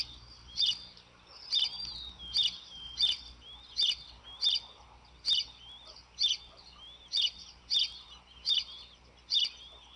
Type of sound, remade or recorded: recorded